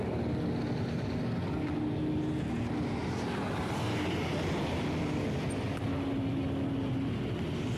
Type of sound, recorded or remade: recorded